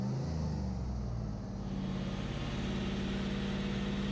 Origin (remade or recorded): recorded